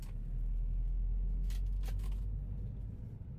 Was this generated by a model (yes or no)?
no